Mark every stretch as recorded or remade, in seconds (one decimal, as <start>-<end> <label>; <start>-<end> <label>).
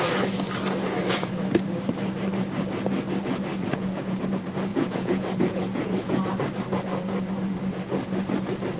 0.0-3.5 recorded; 3.5-4.2 remade; 4.2-4.7 recorded; 4.7-6.3 remade; 6.3-8.8 recorded